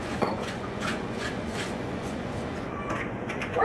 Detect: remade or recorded remade